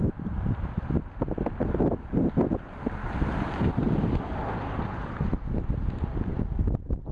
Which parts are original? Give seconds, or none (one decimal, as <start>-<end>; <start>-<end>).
0.0-7.1